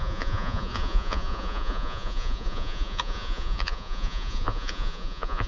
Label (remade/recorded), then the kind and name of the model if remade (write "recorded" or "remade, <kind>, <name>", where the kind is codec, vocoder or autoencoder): remade, vocoder, Vocos